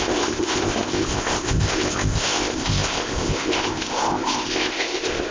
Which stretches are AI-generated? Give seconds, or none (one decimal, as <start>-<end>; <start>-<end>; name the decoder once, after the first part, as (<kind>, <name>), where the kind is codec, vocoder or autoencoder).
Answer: 0.0-5.3 (codec, ZipCodec)